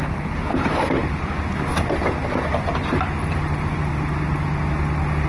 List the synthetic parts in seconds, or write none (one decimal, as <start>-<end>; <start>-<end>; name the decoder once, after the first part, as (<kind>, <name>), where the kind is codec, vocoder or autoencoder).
none